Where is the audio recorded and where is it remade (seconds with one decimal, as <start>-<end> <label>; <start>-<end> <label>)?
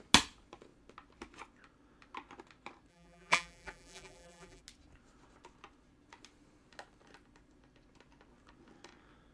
0.0-2.9 recorded; 2.9-4.6 remade; 4.6-9.3 recorded